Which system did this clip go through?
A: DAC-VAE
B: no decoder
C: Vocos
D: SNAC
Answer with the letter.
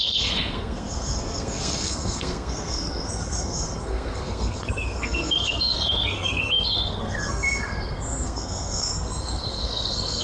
D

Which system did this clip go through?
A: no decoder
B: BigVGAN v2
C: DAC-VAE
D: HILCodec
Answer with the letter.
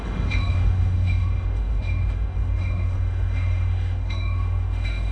C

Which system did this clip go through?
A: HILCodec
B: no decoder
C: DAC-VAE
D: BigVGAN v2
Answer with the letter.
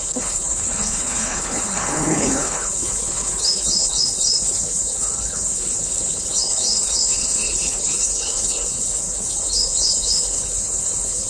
A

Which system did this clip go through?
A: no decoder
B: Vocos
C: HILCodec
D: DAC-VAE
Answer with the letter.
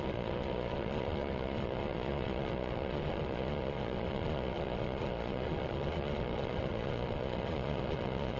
B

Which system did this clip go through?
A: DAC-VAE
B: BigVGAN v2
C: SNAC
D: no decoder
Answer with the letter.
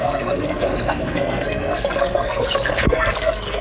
C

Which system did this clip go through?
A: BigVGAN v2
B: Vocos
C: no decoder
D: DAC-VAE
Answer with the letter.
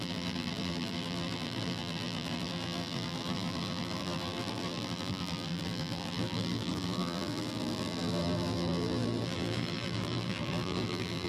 A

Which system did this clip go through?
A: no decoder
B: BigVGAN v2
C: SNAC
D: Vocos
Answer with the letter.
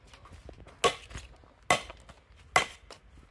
A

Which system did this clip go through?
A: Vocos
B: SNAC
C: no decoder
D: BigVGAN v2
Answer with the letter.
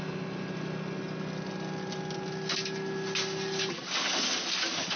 C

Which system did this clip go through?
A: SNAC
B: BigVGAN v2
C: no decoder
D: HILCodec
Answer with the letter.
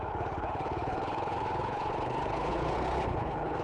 D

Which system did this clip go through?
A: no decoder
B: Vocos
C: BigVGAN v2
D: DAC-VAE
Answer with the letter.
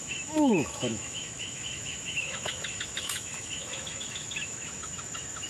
D